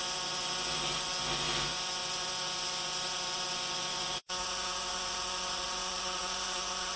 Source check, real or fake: fake